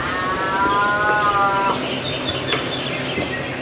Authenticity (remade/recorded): recorded